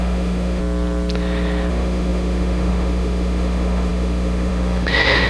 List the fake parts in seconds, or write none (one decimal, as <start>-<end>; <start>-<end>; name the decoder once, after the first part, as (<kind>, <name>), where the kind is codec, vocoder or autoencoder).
0.0-0.6 (autoencoder, DAC-VAE); 1.7-5.3

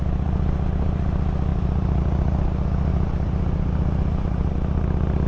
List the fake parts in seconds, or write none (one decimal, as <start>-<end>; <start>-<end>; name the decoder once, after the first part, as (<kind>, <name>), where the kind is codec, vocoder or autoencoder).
1.5-2.0 (vocoder, BigVGAN v2); 2.9-4.5

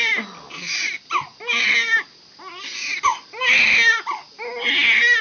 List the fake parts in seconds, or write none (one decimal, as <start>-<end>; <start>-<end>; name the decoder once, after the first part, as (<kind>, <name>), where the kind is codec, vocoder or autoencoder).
none

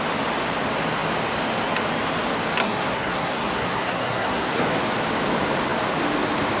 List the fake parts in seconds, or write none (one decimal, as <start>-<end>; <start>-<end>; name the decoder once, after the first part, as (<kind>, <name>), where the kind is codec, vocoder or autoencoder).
2.6-4.6 (codec, SNAC)

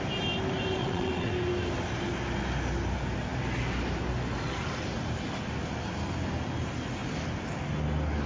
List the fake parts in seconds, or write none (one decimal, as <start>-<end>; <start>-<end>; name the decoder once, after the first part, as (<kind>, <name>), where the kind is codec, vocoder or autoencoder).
0.8-1.3 (vocoder, WaveNeXt)

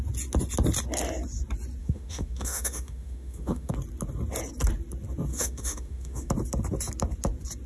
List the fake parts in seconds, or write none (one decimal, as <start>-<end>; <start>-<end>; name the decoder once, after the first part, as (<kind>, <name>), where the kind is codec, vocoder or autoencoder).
1.8-3.7 (autoencoder, DAC-VAE); 5.3-6.3